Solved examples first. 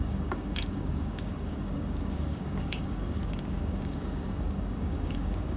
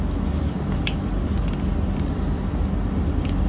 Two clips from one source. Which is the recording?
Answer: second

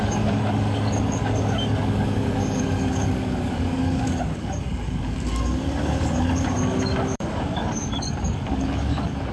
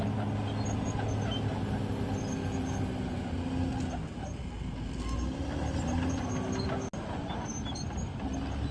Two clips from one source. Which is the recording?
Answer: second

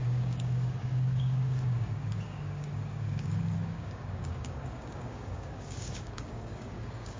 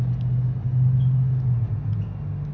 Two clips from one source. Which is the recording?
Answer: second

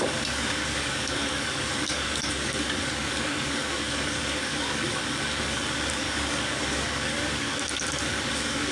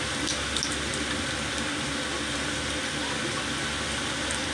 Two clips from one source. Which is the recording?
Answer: second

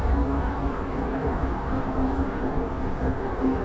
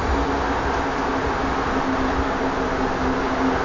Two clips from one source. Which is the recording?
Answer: second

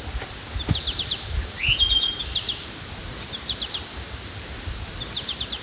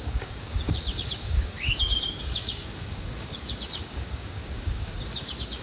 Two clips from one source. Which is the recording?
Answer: first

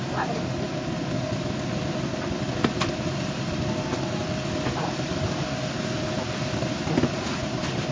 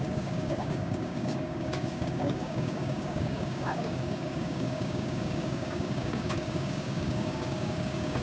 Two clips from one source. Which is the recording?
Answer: first